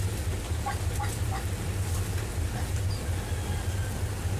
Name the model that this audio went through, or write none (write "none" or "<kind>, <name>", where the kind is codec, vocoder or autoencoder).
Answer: none